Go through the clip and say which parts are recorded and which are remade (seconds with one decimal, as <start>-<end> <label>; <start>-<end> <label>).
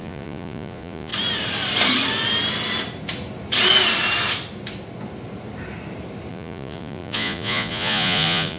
0.0-1.1 remade; 1.1-6.3 recorded; 6.3-8.6 remade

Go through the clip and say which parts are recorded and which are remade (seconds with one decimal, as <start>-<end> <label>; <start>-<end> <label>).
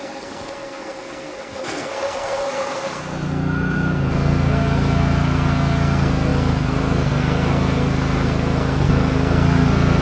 0.0-10.0 remade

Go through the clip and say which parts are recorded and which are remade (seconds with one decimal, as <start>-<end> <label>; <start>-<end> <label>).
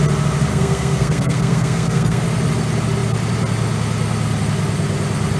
0.0-0.5 recorded; 0.5-2.2 remade; 2.2-5.4 recorded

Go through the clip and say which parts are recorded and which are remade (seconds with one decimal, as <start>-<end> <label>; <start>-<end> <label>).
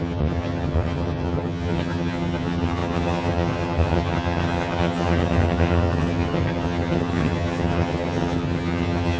0.0-9.2 remade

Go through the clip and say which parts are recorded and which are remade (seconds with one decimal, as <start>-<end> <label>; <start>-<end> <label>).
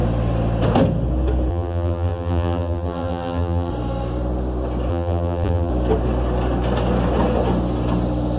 0.0-1.5 recorded; 1.5-3.7 remade; 3.7-4.9 recorded; 4.9-5.7 remade; 5.7-8.4 recorded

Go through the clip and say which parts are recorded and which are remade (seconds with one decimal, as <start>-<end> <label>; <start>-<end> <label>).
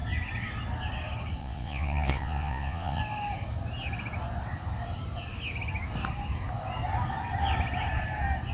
0.0-1.4 recorded; 1.4-3.0 remade; 3.0-8.5 recorded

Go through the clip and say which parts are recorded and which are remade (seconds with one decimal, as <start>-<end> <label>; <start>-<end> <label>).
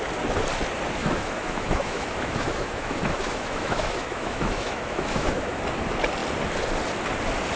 0.0-1.0 recorded; 1.0-5.6 remade; 5.6-7.6 recorded